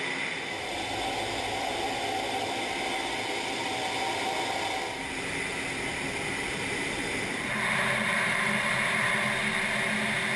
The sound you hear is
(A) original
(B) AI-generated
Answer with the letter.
A